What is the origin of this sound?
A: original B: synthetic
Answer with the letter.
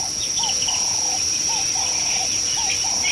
A